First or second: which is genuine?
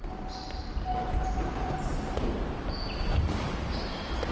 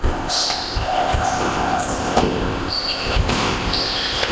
first